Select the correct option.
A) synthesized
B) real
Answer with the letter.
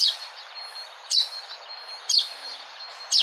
B